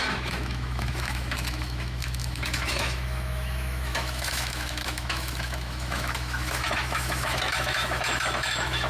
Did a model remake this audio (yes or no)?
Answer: yes